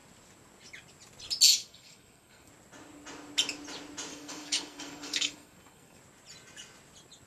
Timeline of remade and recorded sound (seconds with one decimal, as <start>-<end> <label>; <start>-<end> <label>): 0.0-1.6 recorded; 1.6-2.5 remade; 2.5-4.1 recorded; 4.1-6.0 remade; 6.0-7.3 recorded